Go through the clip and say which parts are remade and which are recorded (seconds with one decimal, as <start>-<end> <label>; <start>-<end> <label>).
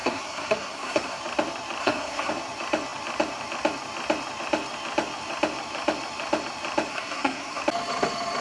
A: 0.0-1.2 remade; 1.2-1.8 recorded; 1.8-2.3 remade; 2.3-6.9 recorded; 6.9-7.6 remade; 7.6-8.4 recorded